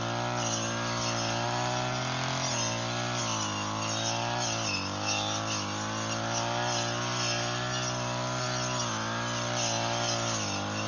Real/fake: real